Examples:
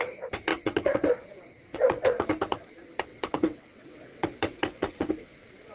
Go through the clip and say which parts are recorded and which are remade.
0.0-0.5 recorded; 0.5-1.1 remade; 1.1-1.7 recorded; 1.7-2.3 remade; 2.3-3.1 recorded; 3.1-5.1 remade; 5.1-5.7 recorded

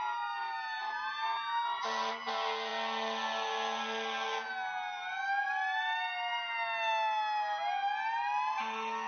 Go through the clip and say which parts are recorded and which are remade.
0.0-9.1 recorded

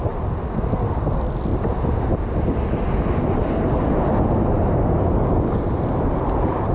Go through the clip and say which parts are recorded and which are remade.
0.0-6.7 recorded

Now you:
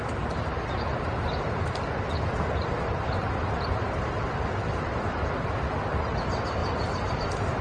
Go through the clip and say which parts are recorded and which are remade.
0.0-0.5 remade; 0.5-4.6 recorded; 4.6-6.6 remade; 6.6-7.1 recorded; 7.1-7.6 remade

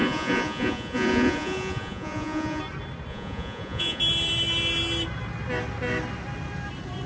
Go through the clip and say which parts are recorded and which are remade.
0.0-2.6 remade; 2.6-3.1 recorded; 3.1-4.0 remade; 4.0-7.1 recorded